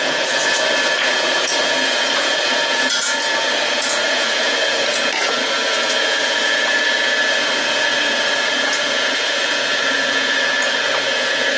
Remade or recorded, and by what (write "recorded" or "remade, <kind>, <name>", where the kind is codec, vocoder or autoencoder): remade, vocoder, Vocos